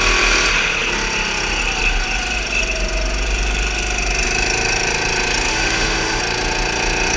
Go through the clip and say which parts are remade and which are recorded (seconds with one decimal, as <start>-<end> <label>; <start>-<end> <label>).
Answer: 0.0-5.5 recorded; 5.5-6.2 remade; 6.2-7.2 recorded